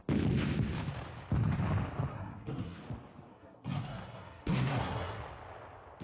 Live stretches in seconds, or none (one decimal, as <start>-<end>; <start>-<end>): 0.0-2.1; 2.8-3.3; 5.2-6.0

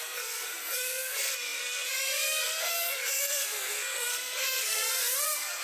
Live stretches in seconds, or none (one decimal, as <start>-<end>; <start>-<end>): none

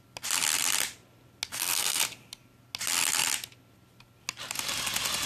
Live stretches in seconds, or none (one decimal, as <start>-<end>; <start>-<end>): 0.0-1.5; 2.0-5.3